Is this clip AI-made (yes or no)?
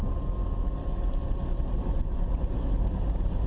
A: no